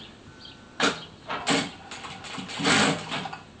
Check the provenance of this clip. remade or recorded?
recorded